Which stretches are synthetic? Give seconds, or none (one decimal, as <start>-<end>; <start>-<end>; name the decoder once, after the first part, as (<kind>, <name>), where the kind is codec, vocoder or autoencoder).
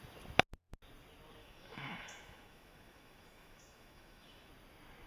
1.4-4.5 (autoencoder, DAC-VAE)